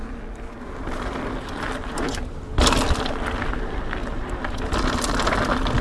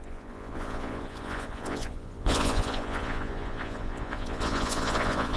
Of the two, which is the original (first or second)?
first